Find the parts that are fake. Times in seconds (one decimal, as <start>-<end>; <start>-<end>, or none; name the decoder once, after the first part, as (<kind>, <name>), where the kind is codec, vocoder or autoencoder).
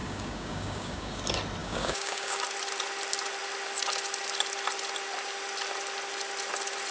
0.0-1.2 (codec, DAC); 1.6-2.4